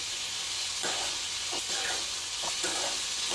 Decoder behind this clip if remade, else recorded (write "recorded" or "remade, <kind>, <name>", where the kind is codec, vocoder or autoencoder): remade, vocoder, Vocos